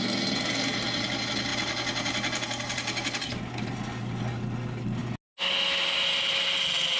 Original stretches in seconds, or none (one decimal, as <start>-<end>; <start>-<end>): 0.0-7.0